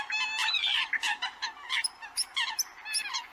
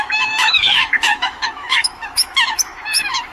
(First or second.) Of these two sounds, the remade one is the second